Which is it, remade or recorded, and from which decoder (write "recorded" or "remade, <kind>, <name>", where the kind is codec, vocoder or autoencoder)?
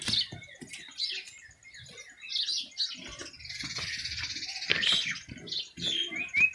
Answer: recorded